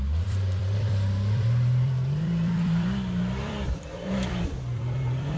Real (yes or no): no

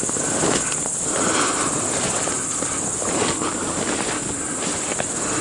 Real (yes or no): yes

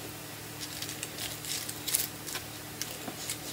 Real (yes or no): yes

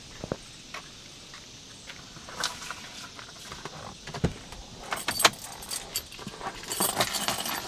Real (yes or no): yes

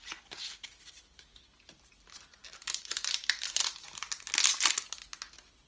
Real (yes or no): yes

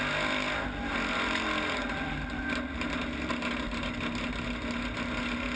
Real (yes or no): yes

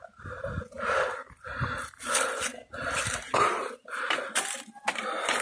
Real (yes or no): yes